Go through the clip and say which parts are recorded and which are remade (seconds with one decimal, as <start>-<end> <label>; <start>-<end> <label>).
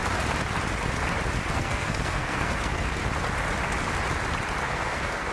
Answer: 0.0-1.5 recorded; 1.5-3.0 remade; 3.0-4.6 recorded; 4.6-5.3 remade